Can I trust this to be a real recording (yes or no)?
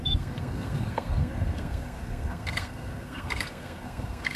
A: no